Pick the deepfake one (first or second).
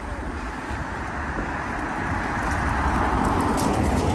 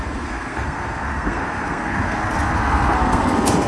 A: second